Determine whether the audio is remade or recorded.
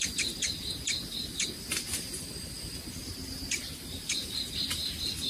recorded